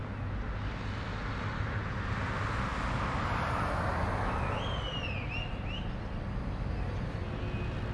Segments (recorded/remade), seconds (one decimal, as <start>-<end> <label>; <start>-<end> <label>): 0.0-7.9 recorded